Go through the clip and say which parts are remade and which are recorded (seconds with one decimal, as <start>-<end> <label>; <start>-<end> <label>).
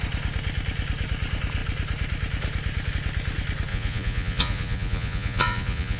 0.0-3.7 recorded; 3.7-6.0 remade